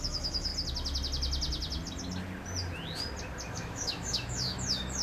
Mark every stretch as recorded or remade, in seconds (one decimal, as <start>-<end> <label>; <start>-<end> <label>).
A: 0.0-0.5 remade; 0.5-3.5 recorded; 3.5-5.0 remade